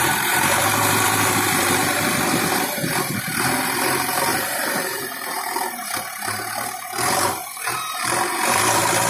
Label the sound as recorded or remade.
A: remade